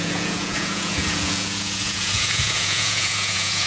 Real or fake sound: fake